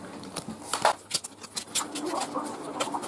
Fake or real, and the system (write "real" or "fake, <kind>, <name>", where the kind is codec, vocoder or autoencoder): real